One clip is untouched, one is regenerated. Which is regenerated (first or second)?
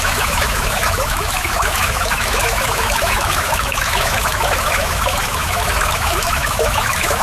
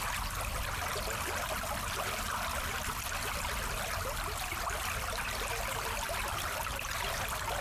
first